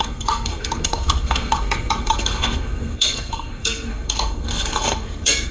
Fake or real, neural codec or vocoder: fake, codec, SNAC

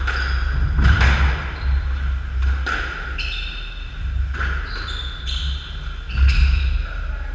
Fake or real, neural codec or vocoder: real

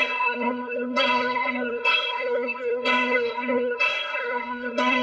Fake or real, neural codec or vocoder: fake, codec, SNAC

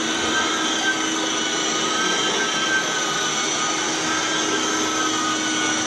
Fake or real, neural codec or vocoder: real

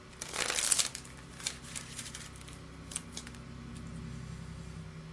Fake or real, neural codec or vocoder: real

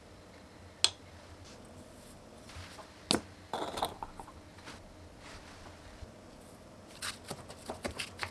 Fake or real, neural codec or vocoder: real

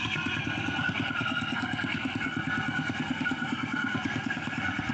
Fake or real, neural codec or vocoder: fake, codec, SNAC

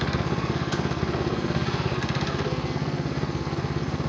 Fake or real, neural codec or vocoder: fake, codec, SNAC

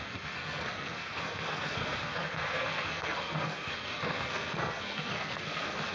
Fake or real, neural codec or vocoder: fake, codec, SNAC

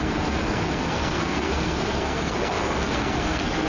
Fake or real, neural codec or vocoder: fake, codec, SNAC